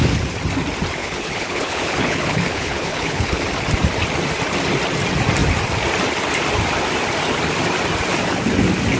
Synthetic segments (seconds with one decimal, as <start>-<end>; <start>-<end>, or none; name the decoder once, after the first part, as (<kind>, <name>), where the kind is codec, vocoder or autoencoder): 1.0-3.4 (codec, HILCodec)